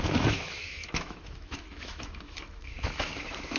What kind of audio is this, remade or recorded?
remade